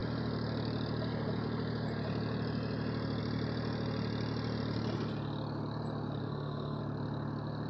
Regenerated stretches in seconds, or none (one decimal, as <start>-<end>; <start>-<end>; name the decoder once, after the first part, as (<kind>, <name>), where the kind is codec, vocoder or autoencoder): 6.2-6.8 (codec, SNAC)